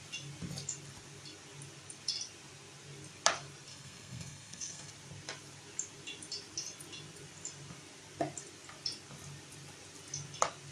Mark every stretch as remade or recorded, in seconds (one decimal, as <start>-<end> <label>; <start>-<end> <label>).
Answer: 0.0-3.7 recorded; 3.7-4.9 remade; 4.9-10.7 recorded